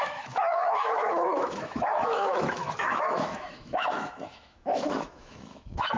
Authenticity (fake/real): fake